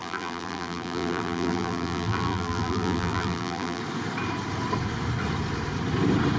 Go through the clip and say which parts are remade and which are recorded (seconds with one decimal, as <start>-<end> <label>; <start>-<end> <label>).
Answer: 0.0-3.8 remade; 3.8-6.4 recorded